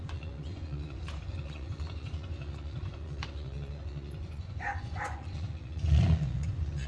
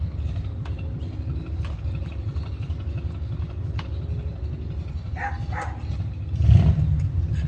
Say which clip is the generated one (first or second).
first